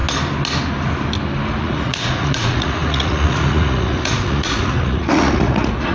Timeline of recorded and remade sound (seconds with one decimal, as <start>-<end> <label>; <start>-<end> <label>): 0.0-1.6 recorded; 1.6-5.9 remade